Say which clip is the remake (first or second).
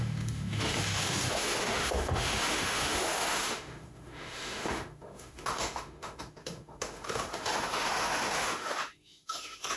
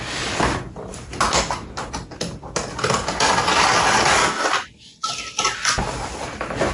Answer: first